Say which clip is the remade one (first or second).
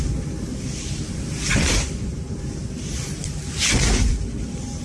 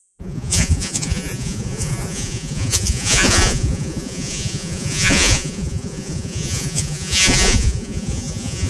second